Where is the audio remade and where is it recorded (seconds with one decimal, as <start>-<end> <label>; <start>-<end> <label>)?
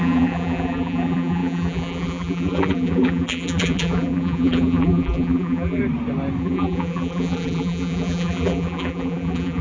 0.0-5.8 remade; 5.8-6.4 recorded; 6.4-9.6 remade